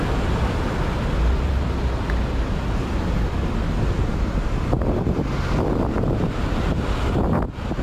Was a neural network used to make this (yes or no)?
no